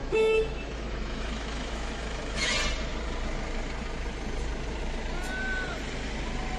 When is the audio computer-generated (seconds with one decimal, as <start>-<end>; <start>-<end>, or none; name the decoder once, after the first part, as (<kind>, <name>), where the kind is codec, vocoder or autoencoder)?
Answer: 0.0-2.5 (autoencoder, DAC-VAE)